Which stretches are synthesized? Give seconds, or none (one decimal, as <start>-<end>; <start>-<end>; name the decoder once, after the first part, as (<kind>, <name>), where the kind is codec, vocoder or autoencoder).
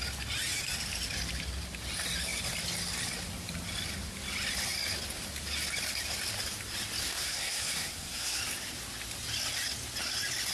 7.0-8.4 (codec, SNAC)